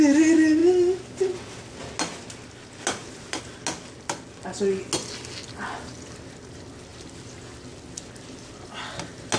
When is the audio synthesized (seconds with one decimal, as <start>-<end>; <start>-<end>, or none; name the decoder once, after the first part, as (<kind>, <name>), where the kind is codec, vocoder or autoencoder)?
none